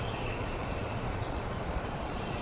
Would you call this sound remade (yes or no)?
yes